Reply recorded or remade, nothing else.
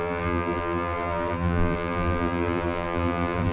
remade